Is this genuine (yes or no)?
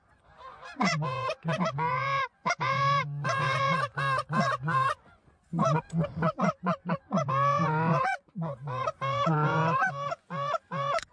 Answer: no